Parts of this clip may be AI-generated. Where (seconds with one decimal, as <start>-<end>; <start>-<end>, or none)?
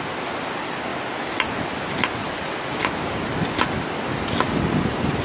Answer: none